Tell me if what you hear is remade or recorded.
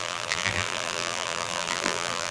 remade